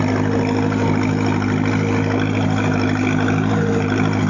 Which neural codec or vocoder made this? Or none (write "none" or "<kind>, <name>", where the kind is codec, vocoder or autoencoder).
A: none